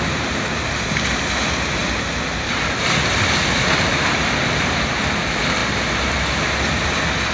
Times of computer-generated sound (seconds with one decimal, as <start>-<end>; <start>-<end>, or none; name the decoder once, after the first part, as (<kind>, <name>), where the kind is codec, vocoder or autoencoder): 1.8-5.1 (vocoder, BigVGAN v2); 5.6-6.2